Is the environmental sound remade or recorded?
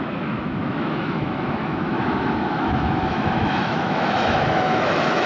remade